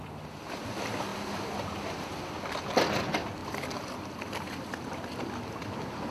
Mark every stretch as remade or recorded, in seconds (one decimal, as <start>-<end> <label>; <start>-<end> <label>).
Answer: 0.0-1.1 recorded; 1.1-2.2 remade; 2.2-3.4 recorded; 3.4-4.7 remade; 4.7-6.1 recorded